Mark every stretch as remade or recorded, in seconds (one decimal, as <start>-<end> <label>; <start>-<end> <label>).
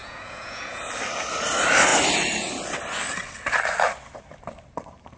0.0-0.8 remade; 0.8-5.2 recorded